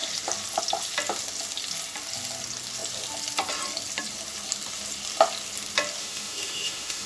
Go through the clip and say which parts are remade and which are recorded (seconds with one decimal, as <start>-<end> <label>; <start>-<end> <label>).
0.0-6.0 recorded; 6.0-7.1 remade